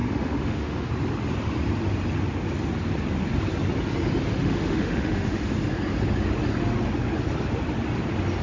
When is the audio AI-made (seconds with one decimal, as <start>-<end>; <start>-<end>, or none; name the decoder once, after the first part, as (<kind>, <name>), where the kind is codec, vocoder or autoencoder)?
0.0-0.9 (autoencoder, DAC-VAE); 4.3-5.4